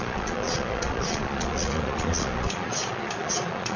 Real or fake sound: fake